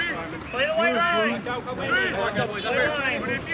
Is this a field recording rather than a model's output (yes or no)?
yes